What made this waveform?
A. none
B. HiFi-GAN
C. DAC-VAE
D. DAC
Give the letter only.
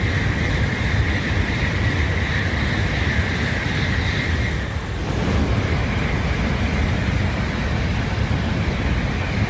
A